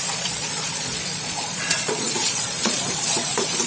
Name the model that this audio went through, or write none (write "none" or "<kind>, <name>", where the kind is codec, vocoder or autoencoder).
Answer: vocoder, Vocos